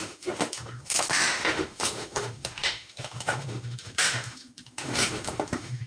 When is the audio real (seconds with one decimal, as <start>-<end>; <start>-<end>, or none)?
none